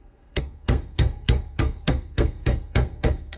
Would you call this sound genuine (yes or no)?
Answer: no